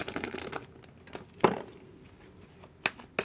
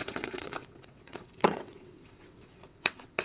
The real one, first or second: first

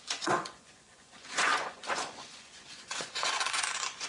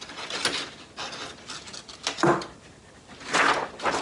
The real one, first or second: second